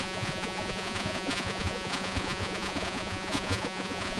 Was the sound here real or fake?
fake